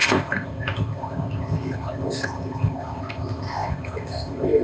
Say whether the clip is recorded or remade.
remade